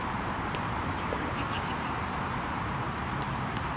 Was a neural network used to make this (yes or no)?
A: yes